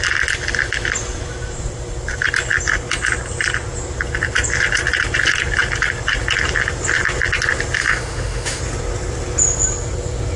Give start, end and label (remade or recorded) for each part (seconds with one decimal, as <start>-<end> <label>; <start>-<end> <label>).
0.0-7.8 recorded; 7.8-8.6 remade; 8.6-10.4 recorded